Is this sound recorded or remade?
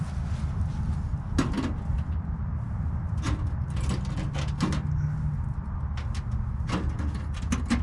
recorded